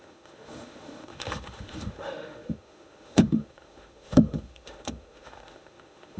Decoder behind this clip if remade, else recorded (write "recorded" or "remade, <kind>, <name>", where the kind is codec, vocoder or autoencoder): remade, autoencoder, DAC-VAE